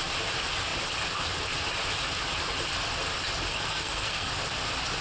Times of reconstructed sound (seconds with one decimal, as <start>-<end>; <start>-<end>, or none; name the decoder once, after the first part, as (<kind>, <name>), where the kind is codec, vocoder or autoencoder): 3.5-4.3 (codec, SNAC)